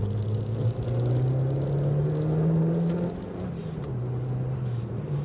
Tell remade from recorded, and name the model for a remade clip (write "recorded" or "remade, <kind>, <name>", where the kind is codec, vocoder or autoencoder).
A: recorded